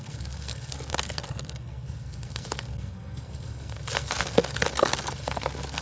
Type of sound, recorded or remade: remade